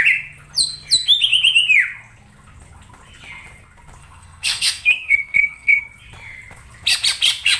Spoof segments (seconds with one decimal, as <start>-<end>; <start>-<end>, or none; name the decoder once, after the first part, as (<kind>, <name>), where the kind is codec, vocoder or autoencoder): 4.0-5.8 (codec, SNAC)